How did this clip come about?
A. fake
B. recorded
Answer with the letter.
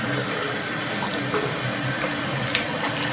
B